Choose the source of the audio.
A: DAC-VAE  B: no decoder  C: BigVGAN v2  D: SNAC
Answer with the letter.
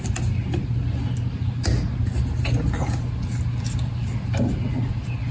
B